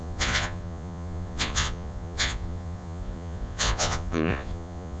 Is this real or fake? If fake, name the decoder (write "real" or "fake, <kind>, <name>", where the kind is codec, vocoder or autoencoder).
fake, vocoder, Vocos